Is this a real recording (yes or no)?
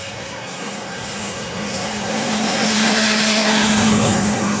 no